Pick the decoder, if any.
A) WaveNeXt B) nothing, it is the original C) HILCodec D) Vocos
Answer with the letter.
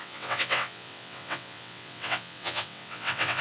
A